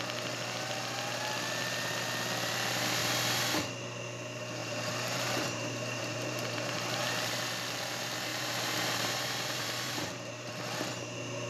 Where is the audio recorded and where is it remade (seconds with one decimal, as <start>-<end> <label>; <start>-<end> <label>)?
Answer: 0.0-3.0 recorded; 3.0-3.6 remade; 3.6-4.6 recorded; 4.6-7.4 remade; 7.4-8.3 recorded; 8.3-10.5 remade; 10.5-11.5 recorded